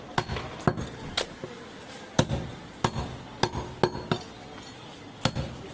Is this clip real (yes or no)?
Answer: yes